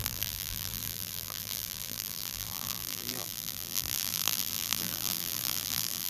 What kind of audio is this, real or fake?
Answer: fake